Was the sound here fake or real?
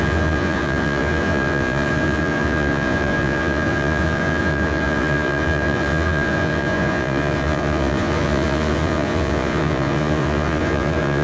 fake